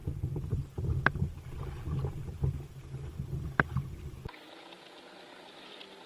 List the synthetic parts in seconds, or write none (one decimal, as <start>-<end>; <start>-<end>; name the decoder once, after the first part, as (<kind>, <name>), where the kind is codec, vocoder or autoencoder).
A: 0.0-2.4 (vocoder, BigVGAN v2)